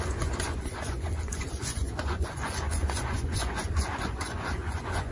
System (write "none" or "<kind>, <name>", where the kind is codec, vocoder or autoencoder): vocoder, Vocos